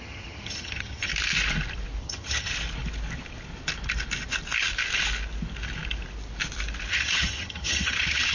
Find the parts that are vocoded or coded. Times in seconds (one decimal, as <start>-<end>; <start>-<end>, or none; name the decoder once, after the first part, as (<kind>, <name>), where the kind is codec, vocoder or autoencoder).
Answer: 0.0-1.1 (vocoder, HiFi-GAN); 2.0-2.5; 6.9-8.3